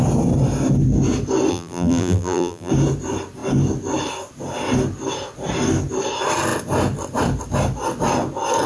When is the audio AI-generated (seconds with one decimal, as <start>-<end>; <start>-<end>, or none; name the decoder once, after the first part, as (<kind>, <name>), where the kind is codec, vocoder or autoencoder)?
1.5-2.7 (vocoder, BigVGAN v2)